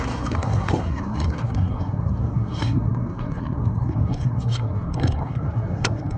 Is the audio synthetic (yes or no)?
yes